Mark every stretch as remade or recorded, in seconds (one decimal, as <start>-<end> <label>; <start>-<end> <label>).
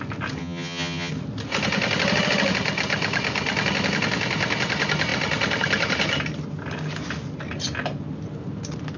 0.0-0.4 recorded; 0.4-1.1 remade; 1.1-9.0 recorded